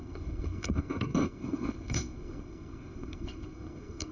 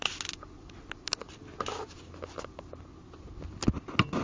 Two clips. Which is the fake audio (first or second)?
first